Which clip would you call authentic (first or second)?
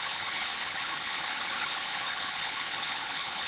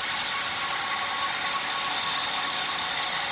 second